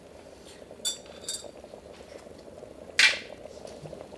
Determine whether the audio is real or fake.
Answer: real